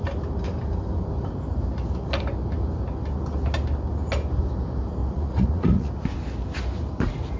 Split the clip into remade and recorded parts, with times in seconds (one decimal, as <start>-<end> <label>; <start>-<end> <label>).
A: 0.0-5.0 recorded; 5.0-5.9 remade; 5.9-7.4 recorded